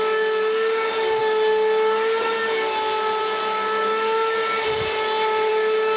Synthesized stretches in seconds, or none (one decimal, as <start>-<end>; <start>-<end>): 4.4-5.5